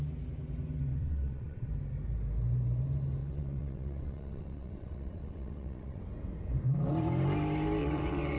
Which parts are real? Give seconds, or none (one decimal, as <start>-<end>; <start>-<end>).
0.0-0.9; 1.7-3.2; 6.0-7.8